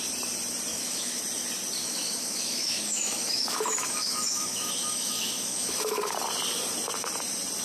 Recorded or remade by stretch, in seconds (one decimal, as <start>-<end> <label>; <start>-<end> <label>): 0.0-0.7 recorded; 0.7-1.2 remade; 1.2-1.8 recorded; 1.8-6.0 remade; 6.0-7.6 recorded